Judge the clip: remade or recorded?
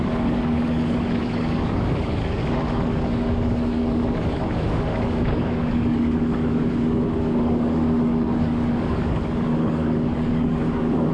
remade